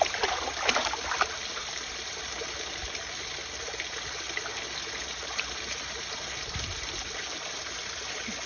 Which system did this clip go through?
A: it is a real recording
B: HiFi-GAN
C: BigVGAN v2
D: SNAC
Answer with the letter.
A